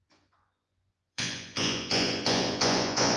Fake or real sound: fake